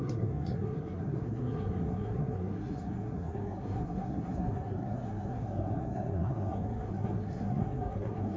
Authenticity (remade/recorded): remade